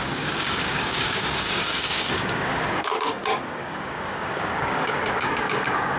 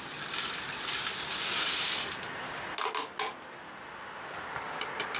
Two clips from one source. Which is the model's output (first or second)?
first